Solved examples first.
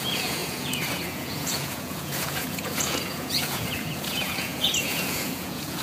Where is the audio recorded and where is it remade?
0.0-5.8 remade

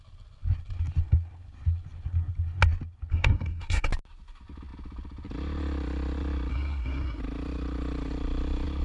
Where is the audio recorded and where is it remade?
0.0-3.1 recorded; 3.1-3.9 remade; 3.9-6.5 recorded; 6.5-7.2 remade; 7.2-8.8 recorded

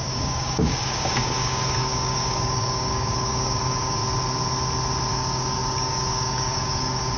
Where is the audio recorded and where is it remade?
0.0-4.0 remade; 4.0-5.1 recorded; 5.1-7.2 remade